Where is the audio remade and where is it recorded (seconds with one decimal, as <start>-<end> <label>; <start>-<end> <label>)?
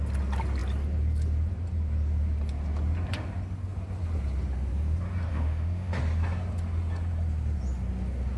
0.0-5.3 recorded; 5.3-6.0 remade; 6.0-8.4 recorded